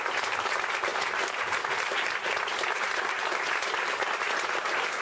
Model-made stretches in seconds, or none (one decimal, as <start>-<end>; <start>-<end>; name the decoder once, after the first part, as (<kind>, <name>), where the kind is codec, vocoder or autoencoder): 0.9-1.6 (vocoder, BigVGAN v2); 2.5-5.0